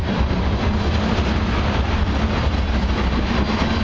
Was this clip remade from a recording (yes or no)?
no